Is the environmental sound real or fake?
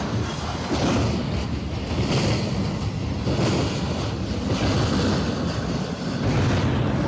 real